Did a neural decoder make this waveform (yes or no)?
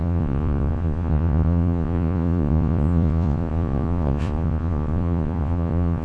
yes